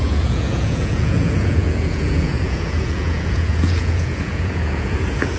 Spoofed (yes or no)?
yes